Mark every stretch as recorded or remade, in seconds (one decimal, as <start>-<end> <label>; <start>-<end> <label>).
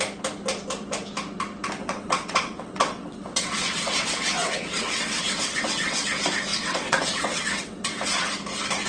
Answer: 0.0-1.8 recorded; 1.8-6.1 remade; 6.1-6.5 recorded; 6.5-8.0 remade; 8.0-8.9 recorded